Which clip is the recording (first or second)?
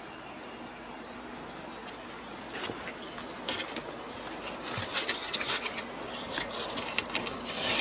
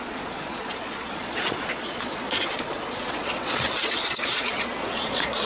first